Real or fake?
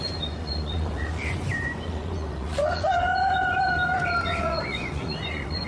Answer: fake